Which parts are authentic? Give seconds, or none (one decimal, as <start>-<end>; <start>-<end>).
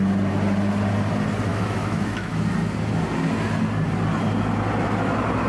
0.0-1.5; 2.3-5.5